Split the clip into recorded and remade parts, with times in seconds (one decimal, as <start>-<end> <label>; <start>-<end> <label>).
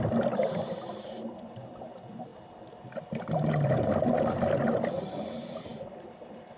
0.0-5.7 recorded; 5.7-6.6 remade